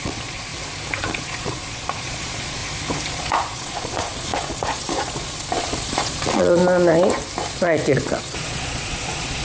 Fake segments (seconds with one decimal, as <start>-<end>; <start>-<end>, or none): 0.0-0.5; 1.0-2.6; 3.1-6.6; 7.5-9.4